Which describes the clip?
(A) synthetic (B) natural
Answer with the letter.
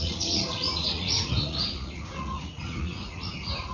A